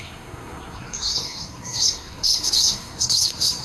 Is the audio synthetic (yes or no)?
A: yes